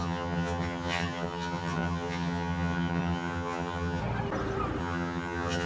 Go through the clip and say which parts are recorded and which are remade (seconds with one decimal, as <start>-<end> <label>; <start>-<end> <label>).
0.0-4.0 remade; 4.0-4.8 recorded; 4.8-5.7 remade